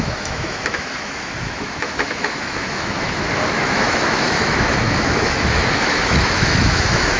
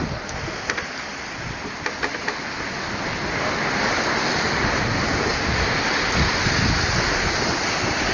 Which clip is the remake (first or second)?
first